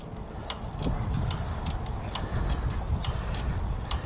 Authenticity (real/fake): real